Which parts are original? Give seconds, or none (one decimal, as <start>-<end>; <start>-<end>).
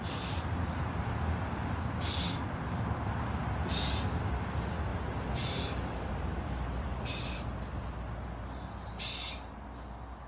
0.0-10.3